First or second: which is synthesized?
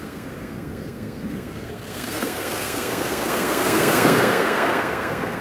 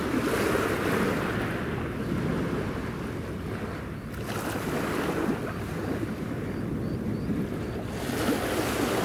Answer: first